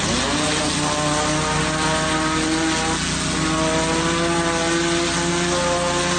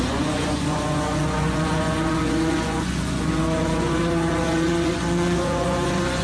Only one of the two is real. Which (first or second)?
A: first